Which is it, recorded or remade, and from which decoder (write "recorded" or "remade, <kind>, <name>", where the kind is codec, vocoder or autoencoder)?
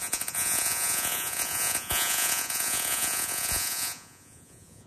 remade, vocoder, Vocos